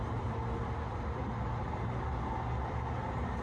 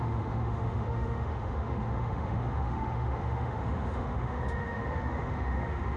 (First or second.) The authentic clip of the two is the first